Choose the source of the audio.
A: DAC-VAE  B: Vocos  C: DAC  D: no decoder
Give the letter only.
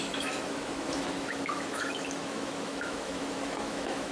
A